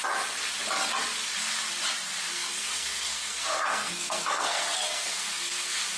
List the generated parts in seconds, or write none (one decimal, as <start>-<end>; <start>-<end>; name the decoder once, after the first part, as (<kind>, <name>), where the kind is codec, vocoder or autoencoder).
2.3-6.0 (codec, SNAC)